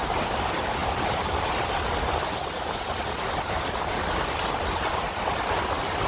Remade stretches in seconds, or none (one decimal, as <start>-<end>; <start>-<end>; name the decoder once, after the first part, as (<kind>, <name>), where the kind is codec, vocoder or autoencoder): none